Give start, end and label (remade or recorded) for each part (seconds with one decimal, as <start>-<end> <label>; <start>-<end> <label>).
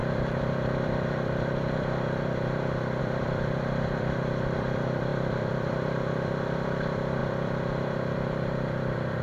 0.0-9.2 remade